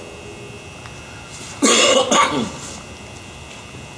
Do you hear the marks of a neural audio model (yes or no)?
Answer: no